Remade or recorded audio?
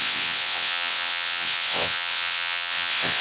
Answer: remade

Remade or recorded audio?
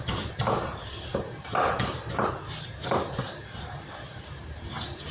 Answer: remade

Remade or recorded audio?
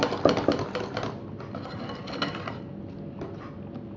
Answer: recorded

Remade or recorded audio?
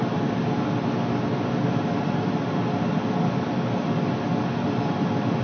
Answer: recorded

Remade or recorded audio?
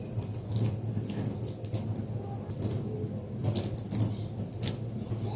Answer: recorded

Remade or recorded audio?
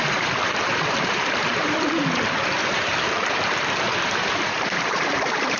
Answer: remade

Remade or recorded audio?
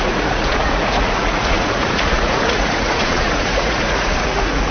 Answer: remade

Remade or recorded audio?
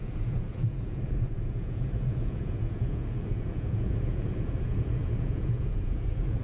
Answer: remade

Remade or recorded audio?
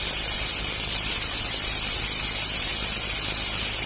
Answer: recorded